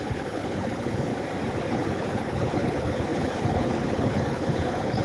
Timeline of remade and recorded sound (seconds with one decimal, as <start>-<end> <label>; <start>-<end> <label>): 0.0-1.1 remade; 1.1-1.6 recorded; 1.6-5.0 remade